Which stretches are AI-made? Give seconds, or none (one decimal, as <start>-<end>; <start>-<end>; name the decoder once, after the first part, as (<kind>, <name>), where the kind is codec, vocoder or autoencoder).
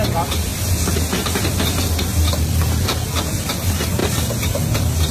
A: none